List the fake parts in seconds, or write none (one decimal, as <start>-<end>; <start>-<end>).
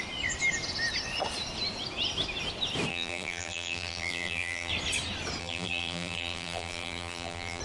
2.9-4.7; 5.4-7.6